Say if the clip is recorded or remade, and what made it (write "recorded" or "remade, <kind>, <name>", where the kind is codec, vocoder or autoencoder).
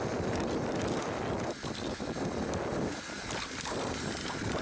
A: recorded